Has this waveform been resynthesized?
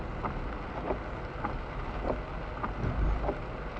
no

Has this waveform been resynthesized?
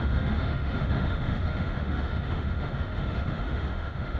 yes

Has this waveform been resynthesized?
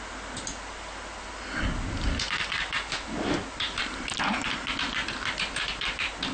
no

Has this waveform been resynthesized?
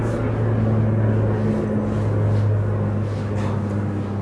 no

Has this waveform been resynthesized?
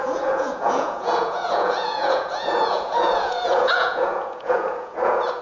yes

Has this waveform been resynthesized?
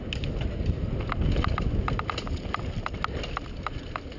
no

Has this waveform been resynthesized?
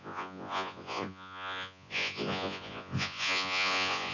yes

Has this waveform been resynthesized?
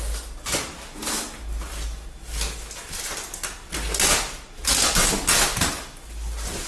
no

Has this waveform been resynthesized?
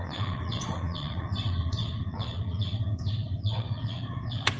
yes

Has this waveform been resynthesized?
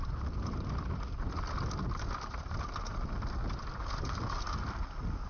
no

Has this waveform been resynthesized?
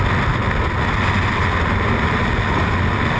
no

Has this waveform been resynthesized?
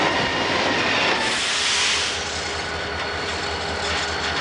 no